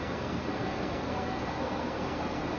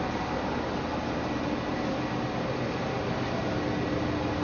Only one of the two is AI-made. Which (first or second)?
first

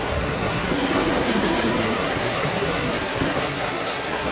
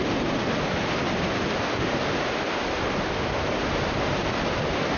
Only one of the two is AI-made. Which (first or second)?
first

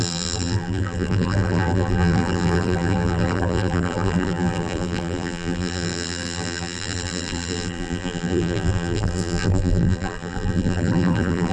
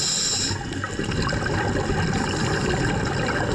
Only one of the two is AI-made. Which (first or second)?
first